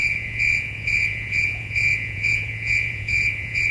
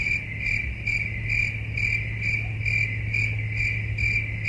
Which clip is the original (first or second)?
second